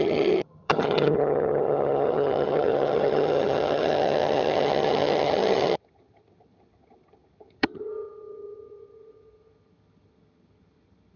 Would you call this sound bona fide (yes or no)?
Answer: no